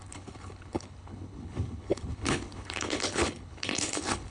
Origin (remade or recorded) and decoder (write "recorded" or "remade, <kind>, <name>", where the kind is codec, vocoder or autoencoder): remade, codec, HILCodec